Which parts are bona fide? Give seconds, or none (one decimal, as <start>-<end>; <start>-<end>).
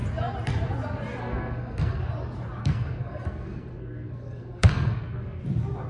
0.0-1.2; 2.0-2.6; 5.4-5.9